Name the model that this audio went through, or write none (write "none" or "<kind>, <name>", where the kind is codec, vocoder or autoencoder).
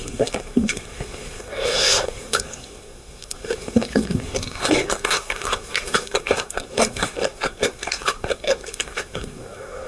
codec, SNAC